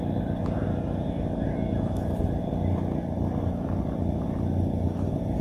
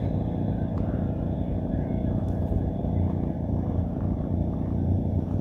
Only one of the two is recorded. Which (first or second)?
first